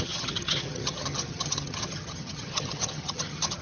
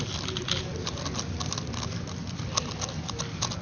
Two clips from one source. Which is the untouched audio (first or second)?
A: second